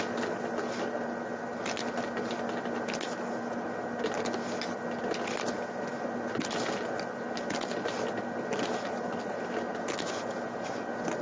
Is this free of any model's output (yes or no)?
yes